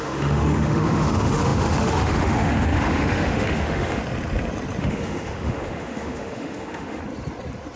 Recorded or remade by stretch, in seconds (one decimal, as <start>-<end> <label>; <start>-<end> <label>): 0.0-4.0 remade; 4.0-4.8 recorded; 4.8-7.0 remade; 7.0-7.8 recorded